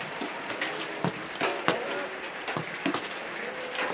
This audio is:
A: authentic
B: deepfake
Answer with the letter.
A